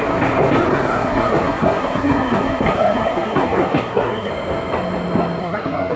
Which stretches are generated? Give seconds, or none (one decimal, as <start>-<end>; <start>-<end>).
0.7-4.3; 5.4-6.0